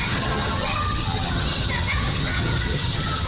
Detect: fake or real fake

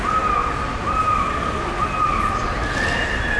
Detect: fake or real real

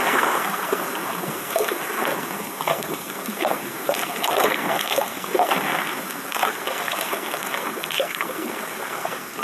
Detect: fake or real fake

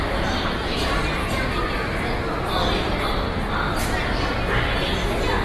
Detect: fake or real real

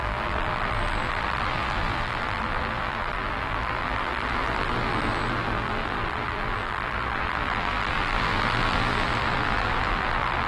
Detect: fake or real fake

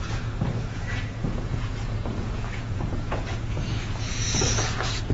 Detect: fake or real fake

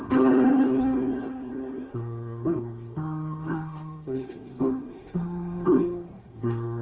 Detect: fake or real fake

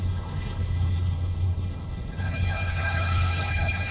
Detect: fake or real fake